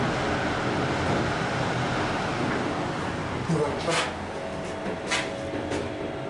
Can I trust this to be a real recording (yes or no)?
yes